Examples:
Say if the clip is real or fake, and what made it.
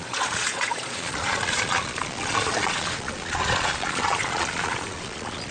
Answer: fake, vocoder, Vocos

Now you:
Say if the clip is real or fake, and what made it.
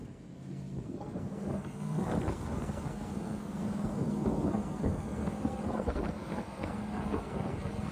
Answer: fake, codec, SNAC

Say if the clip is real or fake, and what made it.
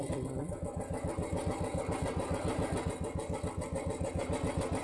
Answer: real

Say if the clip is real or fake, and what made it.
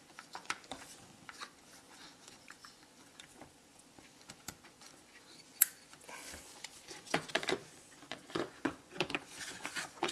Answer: fake, vocoder, Vocos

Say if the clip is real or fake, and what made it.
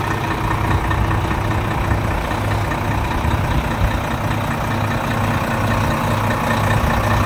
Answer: real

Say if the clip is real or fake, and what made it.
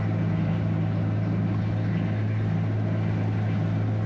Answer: real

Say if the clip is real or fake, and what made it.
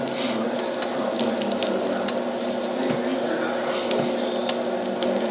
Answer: real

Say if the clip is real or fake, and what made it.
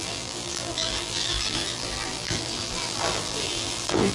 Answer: fake, vocoder, BigVGAN v2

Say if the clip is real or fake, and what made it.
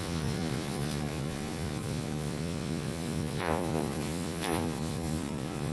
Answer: fake, vocoder, Vocos